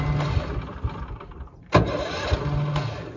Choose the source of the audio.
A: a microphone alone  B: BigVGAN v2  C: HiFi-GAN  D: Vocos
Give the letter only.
A